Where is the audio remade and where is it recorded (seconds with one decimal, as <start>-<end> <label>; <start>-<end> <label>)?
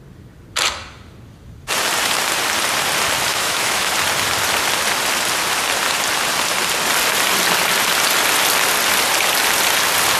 0.0-3.3 recorded; 3.3-3.9 remade; 3.9-10.2 recorded